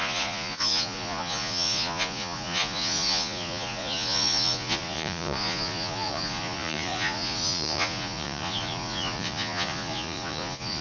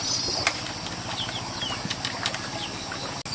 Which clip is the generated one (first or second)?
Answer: first